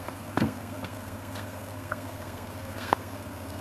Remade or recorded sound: remade